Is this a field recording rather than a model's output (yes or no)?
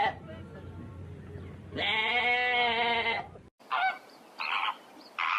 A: yes